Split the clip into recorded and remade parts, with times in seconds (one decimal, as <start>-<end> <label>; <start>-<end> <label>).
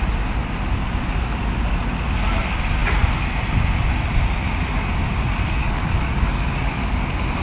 0.0-5.6 recorded; 5.6-6.8 remade; 6.8-7.4 recorded